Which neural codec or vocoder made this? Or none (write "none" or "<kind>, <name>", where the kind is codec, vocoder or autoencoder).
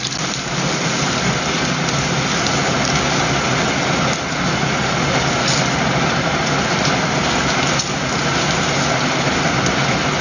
none